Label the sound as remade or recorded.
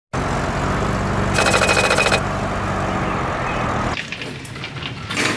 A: recorded